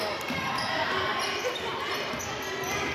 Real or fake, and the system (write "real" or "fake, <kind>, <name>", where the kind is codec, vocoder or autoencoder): real